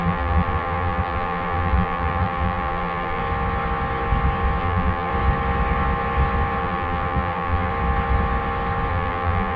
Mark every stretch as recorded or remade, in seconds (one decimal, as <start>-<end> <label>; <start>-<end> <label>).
0.0-3.2 remade; 3.2-4.6 recorded; 4.6-5.1 remade; 5.1-6.6 recorded; 6.6-7.7 remade; 7.7-8.9 recorded; 8.9-9.6 remade